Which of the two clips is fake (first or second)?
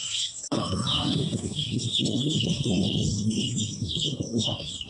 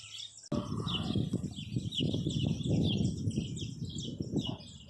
first